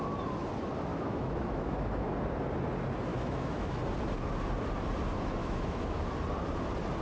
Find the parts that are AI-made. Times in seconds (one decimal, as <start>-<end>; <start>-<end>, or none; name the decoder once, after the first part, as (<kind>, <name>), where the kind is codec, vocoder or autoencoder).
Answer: 0.9-2.1 (autoencoder, DAC-VAE); 3.1-3.8; 5.4-6.0

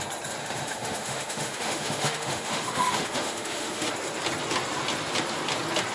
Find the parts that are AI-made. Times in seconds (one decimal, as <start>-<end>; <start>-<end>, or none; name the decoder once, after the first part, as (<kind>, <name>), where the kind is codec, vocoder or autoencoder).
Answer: 0.4-3.9 (autoencoder, DAC-VAE)

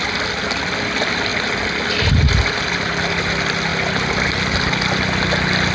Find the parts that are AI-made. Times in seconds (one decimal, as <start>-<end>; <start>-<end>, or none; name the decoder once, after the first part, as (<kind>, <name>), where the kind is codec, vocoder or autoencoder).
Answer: none

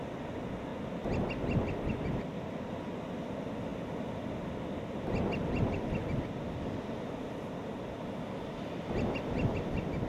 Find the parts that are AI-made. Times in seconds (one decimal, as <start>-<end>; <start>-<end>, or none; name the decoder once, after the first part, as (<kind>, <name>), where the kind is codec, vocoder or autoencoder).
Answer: none

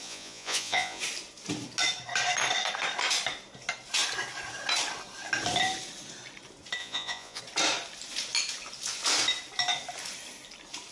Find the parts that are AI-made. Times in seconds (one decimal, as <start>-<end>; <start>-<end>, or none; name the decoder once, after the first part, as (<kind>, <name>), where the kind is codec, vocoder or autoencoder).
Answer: 0.0-1.0 (vocoder, Vocos); 6.8-7.4

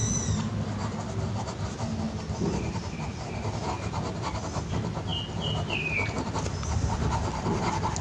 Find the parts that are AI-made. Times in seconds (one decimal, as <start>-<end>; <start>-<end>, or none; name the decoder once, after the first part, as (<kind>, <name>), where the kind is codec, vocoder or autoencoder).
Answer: none

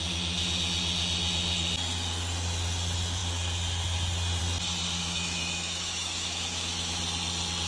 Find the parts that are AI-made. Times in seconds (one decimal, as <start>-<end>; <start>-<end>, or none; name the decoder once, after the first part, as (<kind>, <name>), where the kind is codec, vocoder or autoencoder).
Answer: 5.0-7.0 (autoencoder, DAC-VAE)

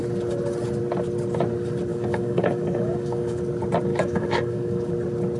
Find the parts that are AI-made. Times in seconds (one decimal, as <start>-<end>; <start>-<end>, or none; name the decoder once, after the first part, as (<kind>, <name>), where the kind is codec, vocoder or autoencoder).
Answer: 1.9-3.4 (codec, DAC); 3.9-4.9